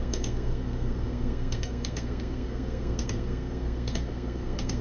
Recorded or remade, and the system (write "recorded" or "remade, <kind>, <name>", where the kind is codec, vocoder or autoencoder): remade, codec, SNAC